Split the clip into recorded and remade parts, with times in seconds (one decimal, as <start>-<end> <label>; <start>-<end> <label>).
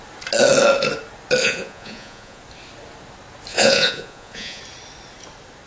0.0-1.4 recorded; 1.4-2.4 remade; 2.4-3.5 recorded; 3.5-4.6 remade; 4.6-5.7 recorded